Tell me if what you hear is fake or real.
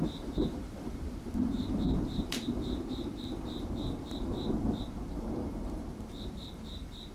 fake